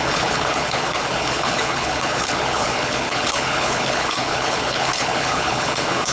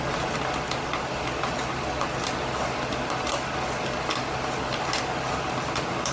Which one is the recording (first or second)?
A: second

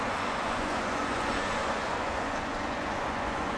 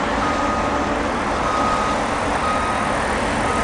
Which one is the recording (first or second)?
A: second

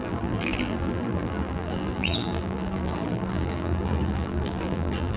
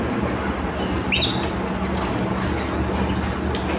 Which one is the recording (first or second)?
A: second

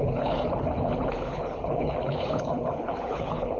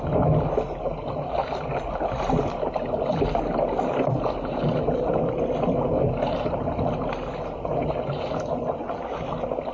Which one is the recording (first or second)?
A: second